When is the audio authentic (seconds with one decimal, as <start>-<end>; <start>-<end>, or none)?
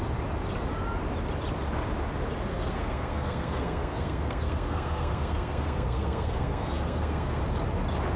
0.0-2.5; 7.4-8.2